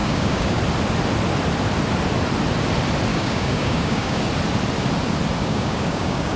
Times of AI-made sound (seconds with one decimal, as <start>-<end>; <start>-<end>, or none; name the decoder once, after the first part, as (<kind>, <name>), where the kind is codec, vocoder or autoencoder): 0.0-0.6 (codec, DAC); 3.1-4.3; 5.4-6.4